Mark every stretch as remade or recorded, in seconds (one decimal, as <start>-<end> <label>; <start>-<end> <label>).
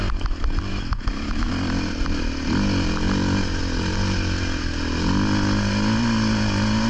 0.0-0.7 recorded; 0.7-1.5 remade; 1.5-6.9 recorded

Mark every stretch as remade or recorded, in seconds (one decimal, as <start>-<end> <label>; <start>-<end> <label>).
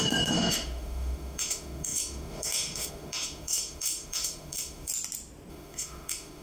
0.0-4.9 remade; 4.9-5.5 recorded; 5.5-6.4 remade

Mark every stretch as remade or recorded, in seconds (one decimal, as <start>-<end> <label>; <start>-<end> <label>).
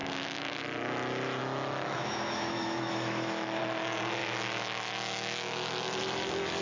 0.0-0.6 remade; 0.6-1.4 recorded; 1.4-3.6 remade; 3.6-4.2 recorded; 4.2-6.0 remade; 6.0-6.6 recorded